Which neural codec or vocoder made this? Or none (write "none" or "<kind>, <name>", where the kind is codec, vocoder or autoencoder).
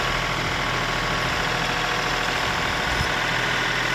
none